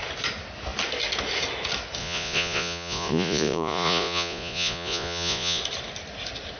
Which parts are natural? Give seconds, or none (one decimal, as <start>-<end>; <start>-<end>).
0.0-2.0; 5.6-6.6